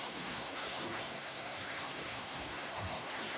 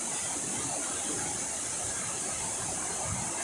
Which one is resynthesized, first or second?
first